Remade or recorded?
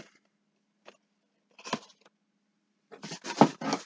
recorded